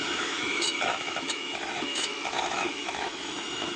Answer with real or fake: fake